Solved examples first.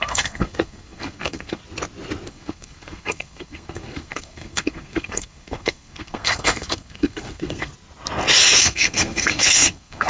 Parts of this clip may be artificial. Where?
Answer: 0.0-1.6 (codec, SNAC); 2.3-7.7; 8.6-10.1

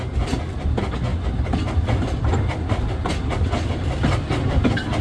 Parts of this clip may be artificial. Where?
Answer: none

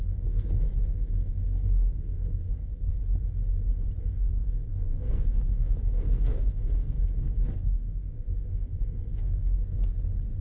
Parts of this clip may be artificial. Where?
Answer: 0.0-2.9 (codec, SNAC); 4.0-9.6